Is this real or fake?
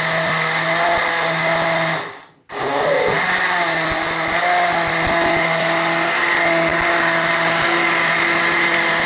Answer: real